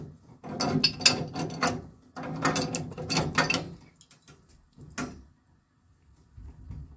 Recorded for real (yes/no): yes